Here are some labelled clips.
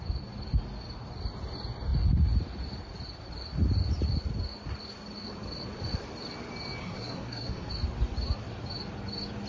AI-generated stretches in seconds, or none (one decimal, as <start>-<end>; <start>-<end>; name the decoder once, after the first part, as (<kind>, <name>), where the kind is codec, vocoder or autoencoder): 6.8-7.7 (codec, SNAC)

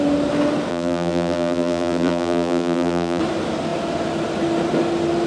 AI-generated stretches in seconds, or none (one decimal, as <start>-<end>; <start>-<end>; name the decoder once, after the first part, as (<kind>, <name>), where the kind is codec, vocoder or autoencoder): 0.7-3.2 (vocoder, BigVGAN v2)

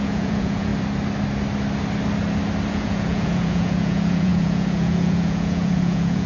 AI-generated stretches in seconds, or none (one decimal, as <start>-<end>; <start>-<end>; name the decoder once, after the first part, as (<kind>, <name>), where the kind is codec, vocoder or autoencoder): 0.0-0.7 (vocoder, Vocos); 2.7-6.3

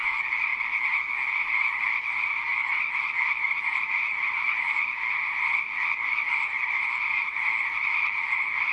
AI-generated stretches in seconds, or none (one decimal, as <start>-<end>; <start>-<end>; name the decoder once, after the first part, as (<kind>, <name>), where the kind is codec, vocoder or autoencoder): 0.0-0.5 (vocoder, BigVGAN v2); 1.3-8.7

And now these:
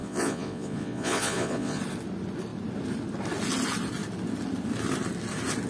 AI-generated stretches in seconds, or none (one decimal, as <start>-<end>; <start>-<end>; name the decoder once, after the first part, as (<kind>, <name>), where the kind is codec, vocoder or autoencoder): 0.0-1.8 (vocoder, Vocos)

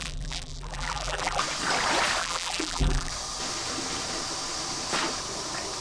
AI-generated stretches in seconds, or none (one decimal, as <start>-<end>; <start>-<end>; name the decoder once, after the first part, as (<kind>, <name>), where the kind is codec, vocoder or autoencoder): 0.0-1.4 (vocoder, BigVGAN v2); 2.2-3.1